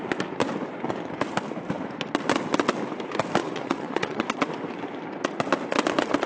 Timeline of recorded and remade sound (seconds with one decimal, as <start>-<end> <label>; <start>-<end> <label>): 0.0-3.4 recorded; 3.4-4.4 remade; 4.4-6.3 recorded